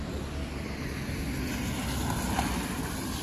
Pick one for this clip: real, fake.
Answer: real